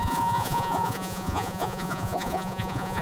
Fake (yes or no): yes